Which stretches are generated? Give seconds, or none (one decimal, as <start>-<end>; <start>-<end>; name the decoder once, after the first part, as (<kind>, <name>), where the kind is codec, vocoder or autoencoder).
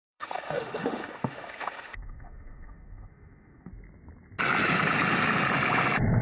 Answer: 0.0-3.7 (autoencoder, DAC-VAE)